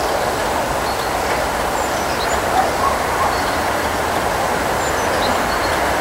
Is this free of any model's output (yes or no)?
yes